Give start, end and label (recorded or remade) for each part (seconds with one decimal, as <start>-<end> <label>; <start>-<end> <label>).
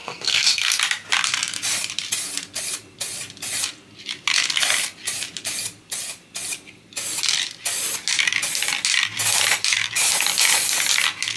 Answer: 0.0-0.8 remade; 0.8-11.4 recorded